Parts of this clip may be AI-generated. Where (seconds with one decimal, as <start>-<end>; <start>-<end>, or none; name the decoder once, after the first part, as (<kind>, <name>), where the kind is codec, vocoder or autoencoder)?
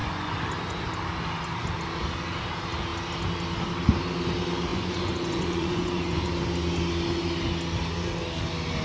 0.0-0.5 (vocoder, Vocos); 4.7-6.3